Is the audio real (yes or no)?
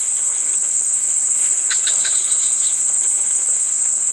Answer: no